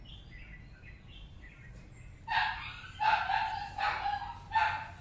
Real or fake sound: real